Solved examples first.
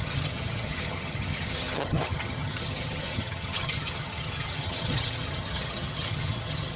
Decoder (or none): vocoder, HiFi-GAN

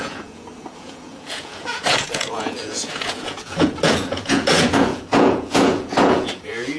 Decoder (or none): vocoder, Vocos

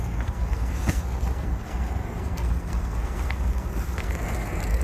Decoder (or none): codec, SNAC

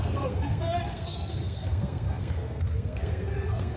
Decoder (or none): codec, SNAC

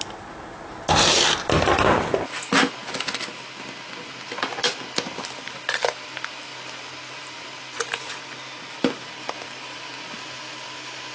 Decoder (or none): none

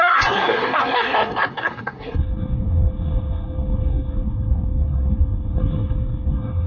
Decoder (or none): codec, SNAC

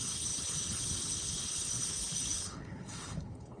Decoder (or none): codec, HILCodec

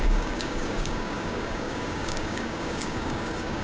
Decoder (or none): codec, DAC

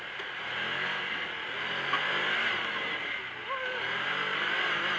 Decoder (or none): none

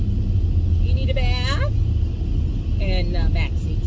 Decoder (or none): none